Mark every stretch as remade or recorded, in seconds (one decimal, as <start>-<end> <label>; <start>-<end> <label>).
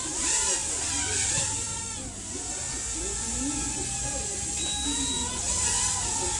0.0-6.4 recorded